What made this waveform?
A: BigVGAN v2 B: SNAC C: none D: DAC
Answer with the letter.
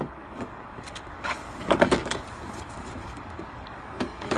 D